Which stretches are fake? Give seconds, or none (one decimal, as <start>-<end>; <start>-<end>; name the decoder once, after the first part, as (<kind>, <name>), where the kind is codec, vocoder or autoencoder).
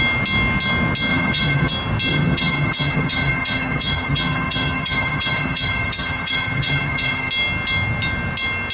1.1-1.7 (vocoder, HiFi-GAN); 2.1-7.3